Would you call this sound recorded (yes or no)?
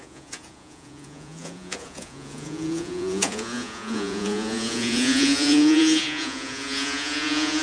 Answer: no